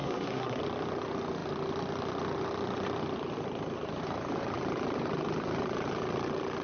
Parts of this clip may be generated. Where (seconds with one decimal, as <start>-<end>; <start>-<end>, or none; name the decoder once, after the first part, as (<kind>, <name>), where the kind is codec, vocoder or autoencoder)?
0.0-0.6 (codec, SNAC)